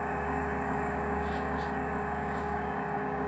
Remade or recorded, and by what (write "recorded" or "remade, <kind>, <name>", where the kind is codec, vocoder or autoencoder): remade, codec, DAC